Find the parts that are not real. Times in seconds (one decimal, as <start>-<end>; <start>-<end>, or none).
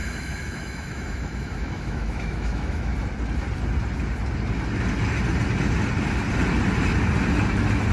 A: 0.0-2.9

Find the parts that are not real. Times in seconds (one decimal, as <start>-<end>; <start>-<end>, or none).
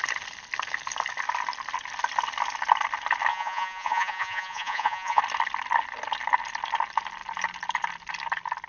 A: 3.3-5.2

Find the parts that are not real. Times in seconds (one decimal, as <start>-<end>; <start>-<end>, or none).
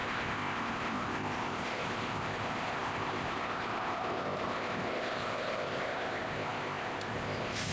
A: 0.0-7.7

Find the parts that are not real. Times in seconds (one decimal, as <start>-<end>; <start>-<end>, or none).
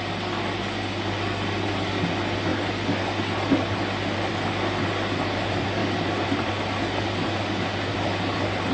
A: none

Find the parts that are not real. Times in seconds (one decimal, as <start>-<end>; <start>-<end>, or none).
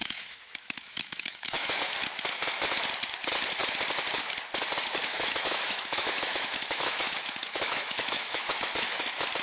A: 0.0-1.8; 5.0-9.0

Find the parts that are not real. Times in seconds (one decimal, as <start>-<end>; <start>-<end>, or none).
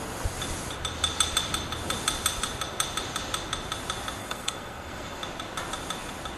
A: 4.2-5.2